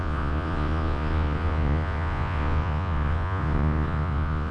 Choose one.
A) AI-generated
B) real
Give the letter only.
A